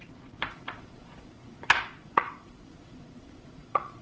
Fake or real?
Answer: fake